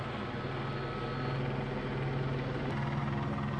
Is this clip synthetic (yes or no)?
no